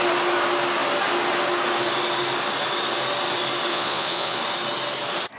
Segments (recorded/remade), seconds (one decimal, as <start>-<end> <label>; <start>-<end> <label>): 0.0-3.7 recorded; 3.7-4.4 remade; 4.4-5.4 recorded